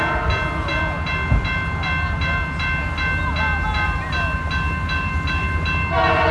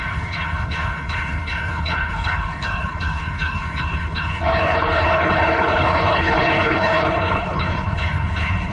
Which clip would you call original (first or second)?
first